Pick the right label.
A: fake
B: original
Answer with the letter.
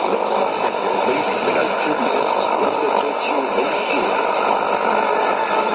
A